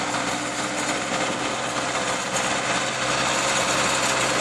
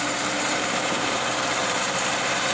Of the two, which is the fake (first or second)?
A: second